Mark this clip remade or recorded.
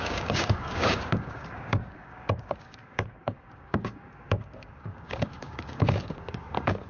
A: remade